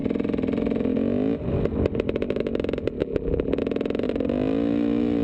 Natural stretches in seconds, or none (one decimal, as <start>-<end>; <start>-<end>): 0.0-3.0; 3.6-5.2